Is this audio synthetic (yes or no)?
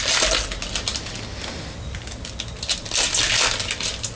no